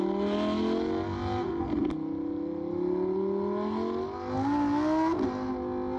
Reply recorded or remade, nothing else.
recorded